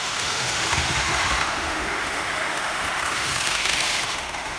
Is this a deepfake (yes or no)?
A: yes